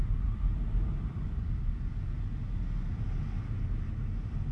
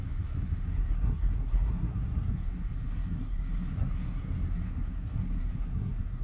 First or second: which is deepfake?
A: second